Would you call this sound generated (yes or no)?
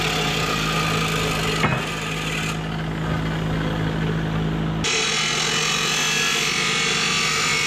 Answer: no